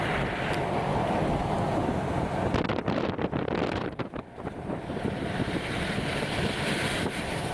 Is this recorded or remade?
remade